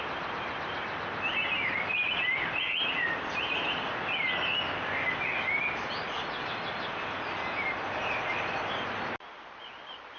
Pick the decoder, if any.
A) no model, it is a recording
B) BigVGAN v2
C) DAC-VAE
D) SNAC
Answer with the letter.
A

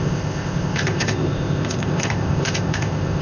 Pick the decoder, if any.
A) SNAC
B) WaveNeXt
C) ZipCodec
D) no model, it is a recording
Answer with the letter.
C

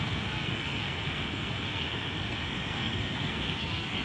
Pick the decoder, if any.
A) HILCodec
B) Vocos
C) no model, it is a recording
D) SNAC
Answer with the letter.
D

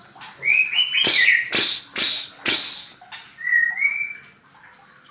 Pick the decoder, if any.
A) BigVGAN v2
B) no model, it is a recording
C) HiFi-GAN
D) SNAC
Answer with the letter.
B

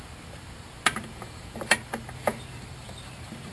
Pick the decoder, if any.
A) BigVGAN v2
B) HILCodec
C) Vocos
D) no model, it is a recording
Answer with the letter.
A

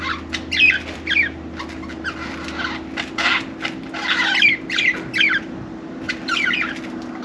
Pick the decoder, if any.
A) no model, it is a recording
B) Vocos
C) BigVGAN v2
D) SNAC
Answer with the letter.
A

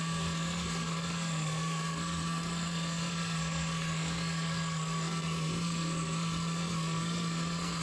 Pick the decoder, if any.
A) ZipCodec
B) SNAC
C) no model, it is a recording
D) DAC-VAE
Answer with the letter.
B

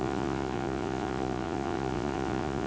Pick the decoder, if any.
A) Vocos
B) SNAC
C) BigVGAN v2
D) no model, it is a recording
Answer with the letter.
A